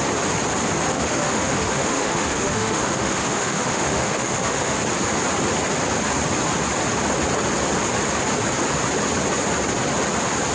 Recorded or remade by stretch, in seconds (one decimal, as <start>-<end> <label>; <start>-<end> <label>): 0.0-0.9 recorded; 0.9-4.8 remade; 4.8-10.5 recorded